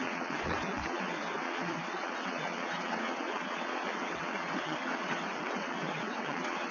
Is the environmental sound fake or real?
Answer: fake